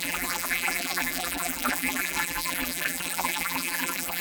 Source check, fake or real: fake